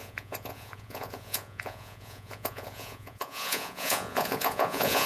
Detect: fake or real fake